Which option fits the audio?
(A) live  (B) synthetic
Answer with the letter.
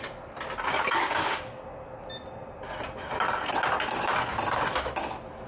A